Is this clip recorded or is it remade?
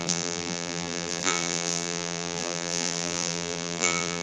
remade